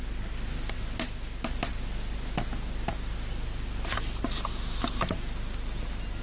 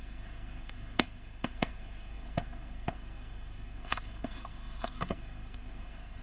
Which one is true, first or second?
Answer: first